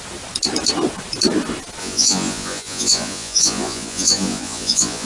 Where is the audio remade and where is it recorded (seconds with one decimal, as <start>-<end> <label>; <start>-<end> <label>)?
0.0-1.8 recorded; 1.8-5.1 remade